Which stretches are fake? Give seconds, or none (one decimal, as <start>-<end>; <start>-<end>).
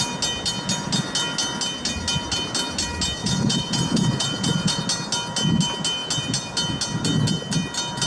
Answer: 3.2-4.8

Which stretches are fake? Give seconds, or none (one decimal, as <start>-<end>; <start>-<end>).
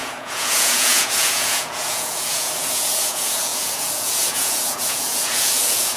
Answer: 0.0-6.0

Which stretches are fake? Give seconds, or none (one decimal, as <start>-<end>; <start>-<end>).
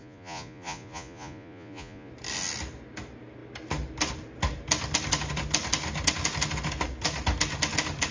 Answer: 0.0-2.1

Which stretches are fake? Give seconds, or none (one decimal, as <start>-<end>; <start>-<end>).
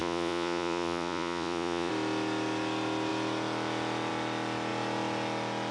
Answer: 0.0-1.9